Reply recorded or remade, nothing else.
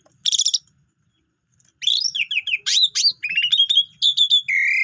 recorded